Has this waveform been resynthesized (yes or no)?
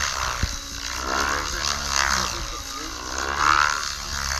no